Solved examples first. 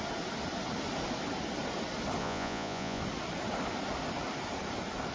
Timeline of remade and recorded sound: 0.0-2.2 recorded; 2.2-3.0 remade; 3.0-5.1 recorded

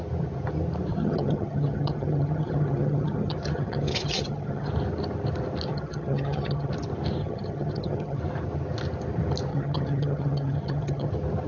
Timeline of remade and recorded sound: 0.0-0.9 recorded; 0.9-4.7 remade; 4.7-5.7 recorded; 5.7-6.7 remade; 6.7-7.2 recorded; 7.2-8.2 remade; 8.2-9.5 recorded; 9.5-11.1 remade; 11.1-11.5 recorded

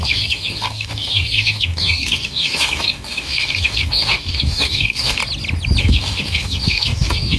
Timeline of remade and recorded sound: 0.0-5.2 remade; 5.2-5.8 recorded; 5.8-7.4 remade

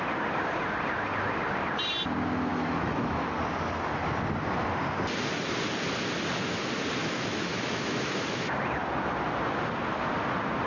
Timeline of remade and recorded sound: 0.0-2.5 recorded; 2.5-3.2 remade; 3.2-7.0 recorded; 7.0-8.6 remade; 8.6-10.7 recorded

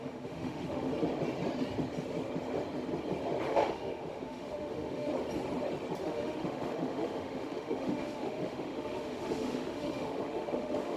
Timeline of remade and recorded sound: 0.0-0.9 remade; 0.9-3.5 recorded; 3.5-5.1 remade; 5.1-6.0 recorded; 6.0-11.0 remade

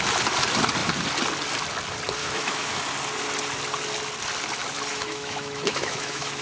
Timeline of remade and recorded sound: 0.0-2.2 recorded; 2.2-2.8 remade; 2.8-4.9 recorded; 4.9-6.4 remade

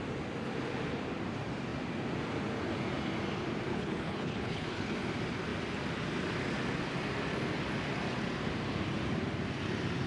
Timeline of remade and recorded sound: 0.0-3.7 recorded; 3.7-4.9 remade; 4.9-10.1 recorded